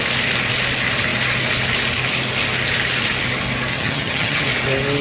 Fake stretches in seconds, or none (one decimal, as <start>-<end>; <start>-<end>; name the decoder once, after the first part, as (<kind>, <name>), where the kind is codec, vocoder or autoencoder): 3.7-4.4 (vocoder, HiFi-GAN)